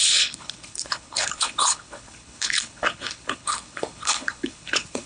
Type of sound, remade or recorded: remade